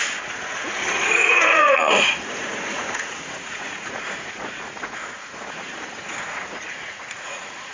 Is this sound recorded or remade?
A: remade